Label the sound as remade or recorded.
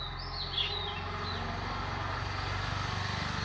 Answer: recorded